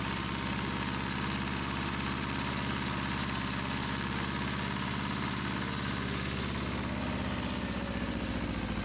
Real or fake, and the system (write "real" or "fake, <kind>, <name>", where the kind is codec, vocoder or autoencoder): real